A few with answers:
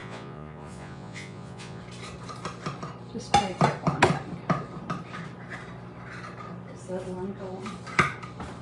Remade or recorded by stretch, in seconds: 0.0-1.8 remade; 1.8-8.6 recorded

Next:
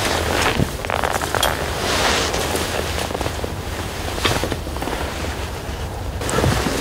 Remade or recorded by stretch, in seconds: 0.0-0.8 remade; 0.8-4.4 recorded; 4.4-6.0 remade; 6.0-6.8 recorded

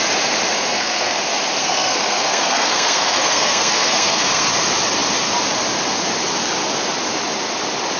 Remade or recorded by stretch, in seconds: 0.0-0.6 recorded; 0.6-1.2 remade; 1.2-1.6 recorded; 1.6-4.5 remade; 4.5-8.0 recorded